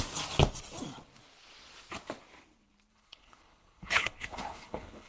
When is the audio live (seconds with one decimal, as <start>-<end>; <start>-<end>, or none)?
0.0-2.9